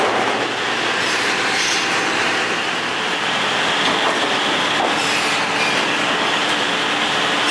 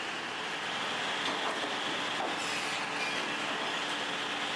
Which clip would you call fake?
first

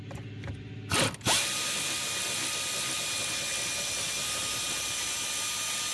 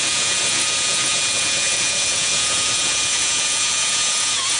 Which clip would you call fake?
second